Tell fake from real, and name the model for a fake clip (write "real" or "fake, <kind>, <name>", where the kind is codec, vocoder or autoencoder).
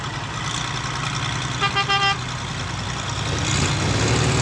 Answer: real